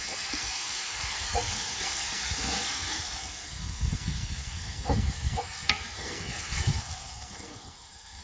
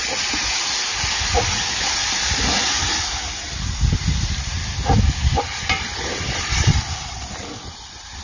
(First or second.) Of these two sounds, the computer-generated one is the first